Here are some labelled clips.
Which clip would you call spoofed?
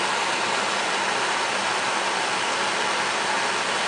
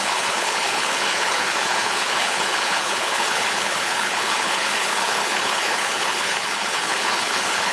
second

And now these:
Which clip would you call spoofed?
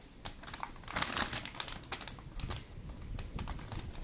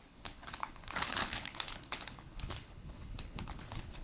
second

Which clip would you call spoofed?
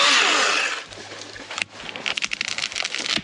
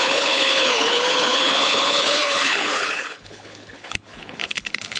second